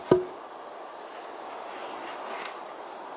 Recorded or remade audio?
recorded